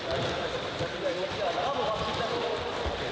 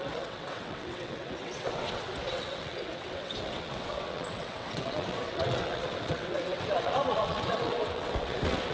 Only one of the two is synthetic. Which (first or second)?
second